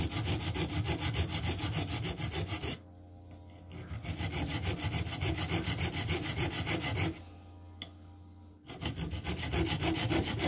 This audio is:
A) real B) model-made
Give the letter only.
A